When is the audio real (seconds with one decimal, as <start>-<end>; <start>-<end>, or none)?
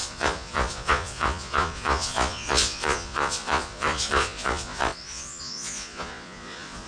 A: none